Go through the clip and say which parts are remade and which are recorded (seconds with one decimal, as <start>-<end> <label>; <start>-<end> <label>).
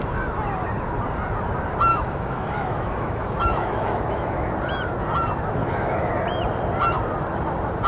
0.0-1.9 recorded; 1.9-4.5 remade; 4.5-5.6 recorded; 5.6-6.1 remade; 6.1-7.9 recorded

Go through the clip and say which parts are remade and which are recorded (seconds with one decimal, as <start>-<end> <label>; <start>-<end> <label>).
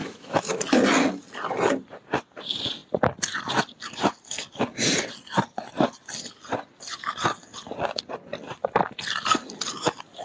0.0-0.6 remade; 0.6-10.2 recorded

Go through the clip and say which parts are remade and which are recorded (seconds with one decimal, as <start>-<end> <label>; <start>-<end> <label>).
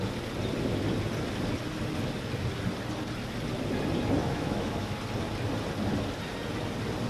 0.0-4.2 recorded; 4.2-5.0 remade; 5.0-7.1 recorded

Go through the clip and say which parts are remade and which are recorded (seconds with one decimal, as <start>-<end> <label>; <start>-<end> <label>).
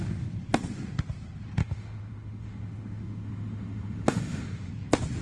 0.0-1.6 recorded; 1.6-4.7 remade; 4.7-5.2 recorded